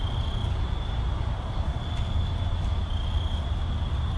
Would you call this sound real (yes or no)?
yes